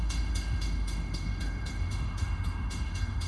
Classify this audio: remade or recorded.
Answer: remade